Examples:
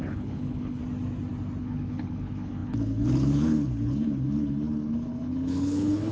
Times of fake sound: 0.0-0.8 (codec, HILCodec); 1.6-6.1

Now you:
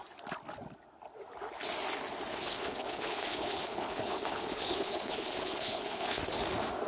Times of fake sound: 2.3-6.2 (codec, HILCodec)

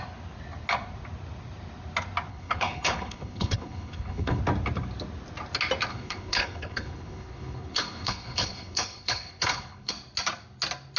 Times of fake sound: 2.3-4.4 (codec, HILCodec); 5.9-9.9